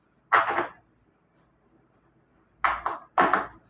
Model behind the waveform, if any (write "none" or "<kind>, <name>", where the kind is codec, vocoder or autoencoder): none